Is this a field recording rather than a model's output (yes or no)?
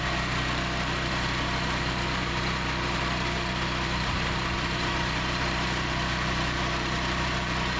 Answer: no